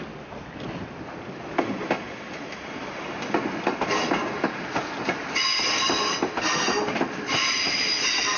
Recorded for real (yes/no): yes